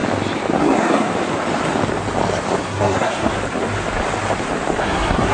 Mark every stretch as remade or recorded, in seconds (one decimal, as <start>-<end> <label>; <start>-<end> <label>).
0.0-0.6 recorded; 0.6-1.1 remade; 1.1-2.6 recorded; 2.6-3.3 remade; 3.3-4.8 recorded; 4.8-5.3 remade